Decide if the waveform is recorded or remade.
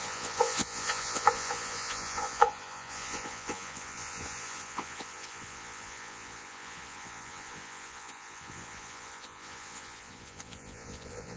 remade